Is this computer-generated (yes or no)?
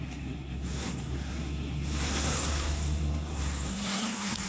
yes